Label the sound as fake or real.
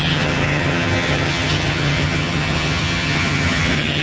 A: fake